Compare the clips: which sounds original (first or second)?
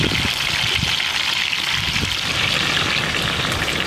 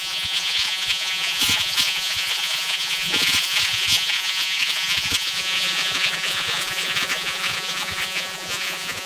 first